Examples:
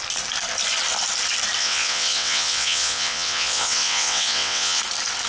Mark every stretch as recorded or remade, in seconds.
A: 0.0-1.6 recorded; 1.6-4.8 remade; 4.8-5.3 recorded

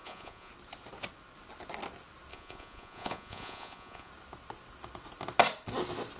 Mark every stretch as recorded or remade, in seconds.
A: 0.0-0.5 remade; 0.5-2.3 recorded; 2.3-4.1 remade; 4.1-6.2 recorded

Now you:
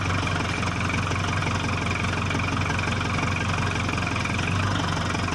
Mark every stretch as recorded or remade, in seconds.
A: 0.0-5.3 recorded

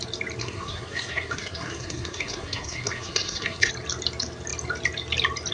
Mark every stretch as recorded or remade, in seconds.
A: 0.0-0.4 recorded; 0.4-3.7 remade; 3.7-5.5 recorded